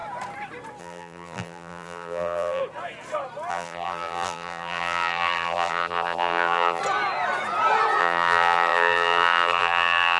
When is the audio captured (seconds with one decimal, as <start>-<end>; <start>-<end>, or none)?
0.0-0.8; 2.6-3.5; 6.8-8.0